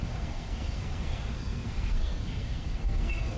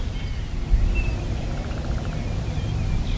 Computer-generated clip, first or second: first